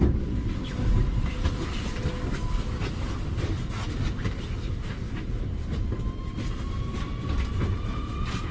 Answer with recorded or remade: recorded